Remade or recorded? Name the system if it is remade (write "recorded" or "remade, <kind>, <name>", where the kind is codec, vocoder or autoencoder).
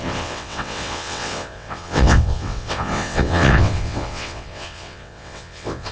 remade, vocoder, WaveNeXt